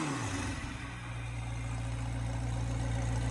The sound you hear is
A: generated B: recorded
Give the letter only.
B